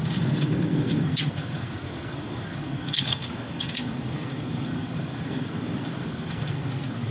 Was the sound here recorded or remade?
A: remade